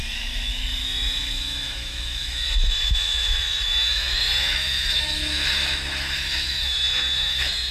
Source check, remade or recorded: remade